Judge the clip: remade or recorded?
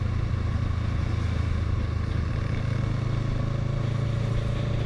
recorded